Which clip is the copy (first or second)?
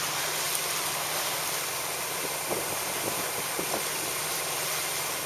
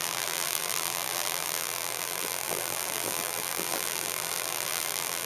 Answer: second